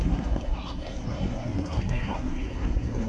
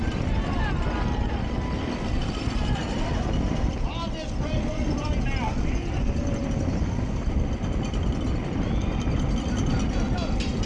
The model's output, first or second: first